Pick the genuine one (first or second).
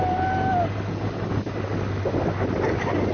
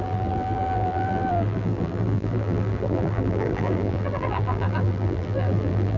first